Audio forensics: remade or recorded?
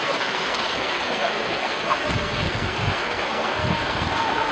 remade